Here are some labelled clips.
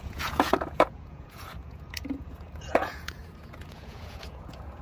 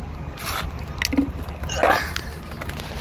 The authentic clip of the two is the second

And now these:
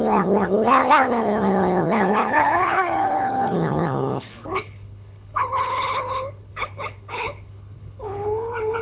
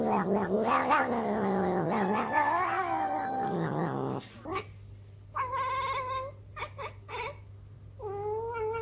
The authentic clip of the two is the second